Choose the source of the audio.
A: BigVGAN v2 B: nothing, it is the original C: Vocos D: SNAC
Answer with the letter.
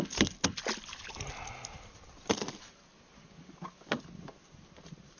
B